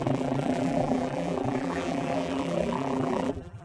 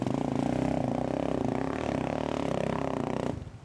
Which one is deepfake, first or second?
first